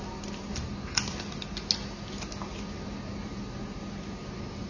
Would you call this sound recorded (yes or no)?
yes